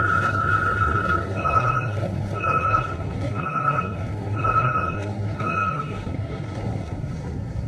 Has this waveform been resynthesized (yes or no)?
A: yes